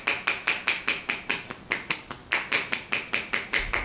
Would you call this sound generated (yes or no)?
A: no